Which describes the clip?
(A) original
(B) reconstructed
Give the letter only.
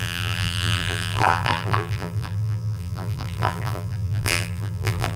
B